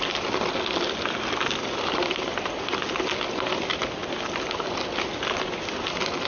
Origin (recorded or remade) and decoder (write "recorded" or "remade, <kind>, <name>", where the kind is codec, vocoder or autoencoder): recorded